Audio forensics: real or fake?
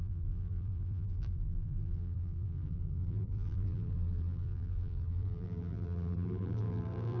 fake